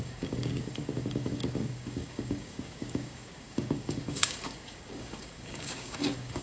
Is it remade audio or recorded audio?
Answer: remade